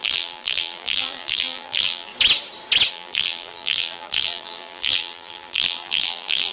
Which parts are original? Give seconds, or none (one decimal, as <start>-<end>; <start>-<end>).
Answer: 2.1-2.9